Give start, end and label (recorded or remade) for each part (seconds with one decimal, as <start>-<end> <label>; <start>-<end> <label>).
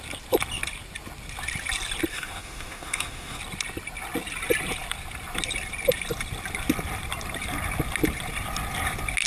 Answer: 0.0-2.1 recorded; 2.1-3.4 remade; 3.4-9.3 recorded